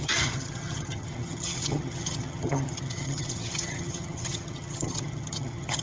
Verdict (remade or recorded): remade